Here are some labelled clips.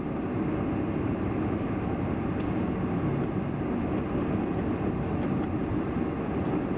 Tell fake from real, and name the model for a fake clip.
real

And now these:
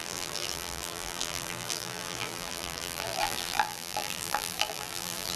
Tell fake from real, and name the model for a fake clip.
fake, vocoder, BigVGAN v2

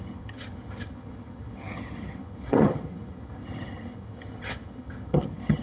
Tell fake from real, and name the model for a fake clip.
fake, vocoder, HiFi-GAN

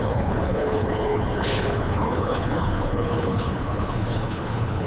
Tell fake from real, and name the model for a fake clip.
fake, codec, HILCodec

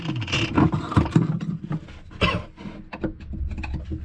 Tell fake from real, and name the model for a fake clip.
real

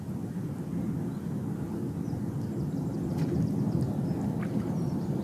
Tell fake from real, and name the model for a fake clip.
real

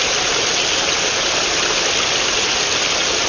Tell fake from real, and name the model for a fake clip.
real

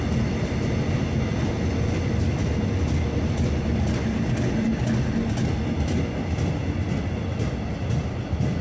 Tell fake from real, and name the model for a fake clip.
real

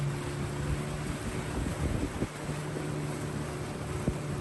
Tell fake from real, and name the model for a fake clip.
real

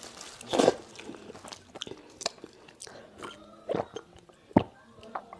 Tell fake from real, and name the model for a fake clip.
real